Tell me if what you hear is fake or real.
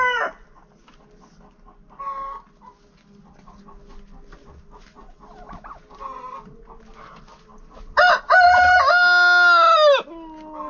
real